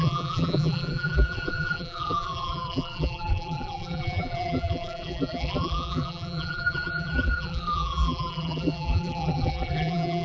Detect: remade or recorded remade